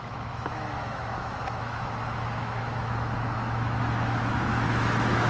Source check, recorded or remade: remade